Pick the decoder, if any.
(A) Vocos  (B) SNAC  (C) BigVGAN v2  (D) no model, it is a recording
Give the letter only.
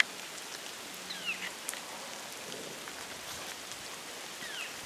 D